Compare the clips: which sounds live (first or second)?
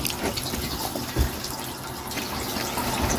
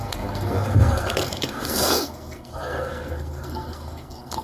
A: first